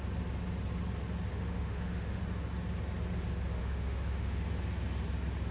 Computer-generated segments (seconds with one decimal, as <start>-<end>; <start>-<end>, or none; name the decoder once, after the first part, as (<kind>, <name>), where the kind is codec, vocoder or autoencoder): 1.3-2.2 (autoencoder, DAC-VAE); 3.6-4.5